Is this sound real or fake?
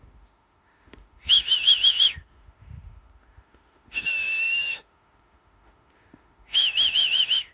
fake